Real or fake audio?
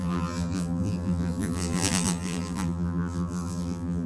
fake